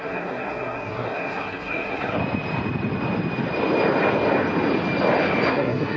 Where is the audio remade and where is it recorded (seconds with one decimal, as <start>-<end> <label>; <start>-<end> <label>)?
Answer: 0.0-2.2 remade; 2.2-5.5 recorded; 5.5-6.0 remade